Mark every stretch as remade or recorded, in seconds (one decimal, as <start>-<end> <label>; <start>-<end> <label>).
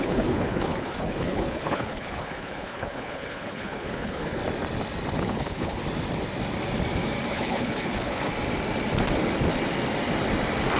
0.0-4.4 remade; 4.4-5.2 recorded; 5.2-5.8 remade; 5.8-7.3 recorded; 7.3-8.3 remade; 8.3-10.8 recorded